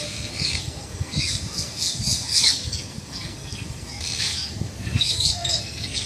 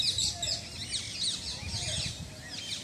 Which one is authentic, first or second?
second